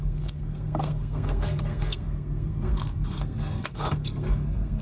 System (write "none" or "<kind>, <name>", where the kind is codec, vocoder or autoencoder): codec, SNAC